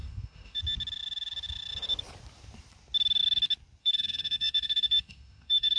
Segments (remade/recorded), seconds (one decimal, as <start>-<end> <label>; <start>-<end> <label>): 0.0-0.6 remade; 0.6-3.8 recorded; 3.8-5.8 remade